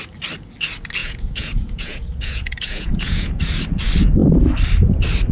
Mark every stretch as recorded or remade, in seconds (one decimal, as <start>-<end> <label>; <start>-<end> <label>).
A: 0.0-1.0 recorded; 1.0-3.4 remade; 3.4-5.3 recorded